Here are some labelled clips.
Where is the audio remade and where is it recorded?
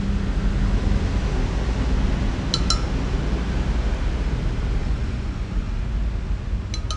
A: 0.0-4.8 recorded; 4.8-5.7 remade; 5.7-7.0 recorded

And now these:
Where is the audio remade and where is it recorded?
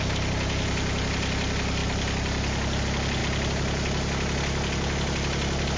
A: 0.0-5.8 recorded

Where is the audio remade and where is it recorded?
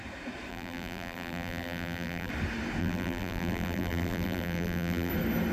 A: 0.0-0.5 recorded; 0.5-2.3 remade; 2.3-2.8 recorded; 2.8-5.1 remade; 5.1-5.5 recorded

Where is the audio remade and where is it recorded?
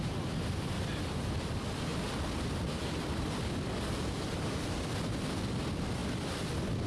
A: 0.0-1.9 remade; 1.9-2.7 recorded; 2.7-6.9 remade